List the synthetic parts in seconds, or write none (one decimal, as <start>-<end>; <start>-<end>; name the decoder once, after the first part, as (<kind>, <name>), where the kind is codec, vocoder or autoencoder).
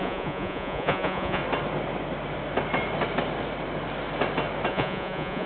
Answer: 0.0-1.4 (vocoder, Vocos); 4.7-5.5